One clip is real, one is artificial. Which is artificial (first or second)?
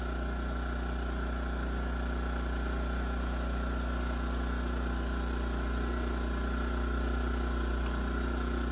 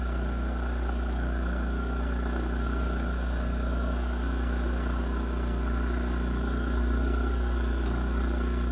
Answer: second